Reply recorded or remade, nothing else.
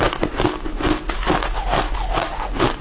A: recorded